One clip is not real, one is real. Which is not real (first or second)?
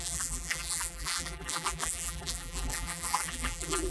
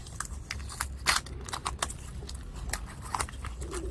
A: first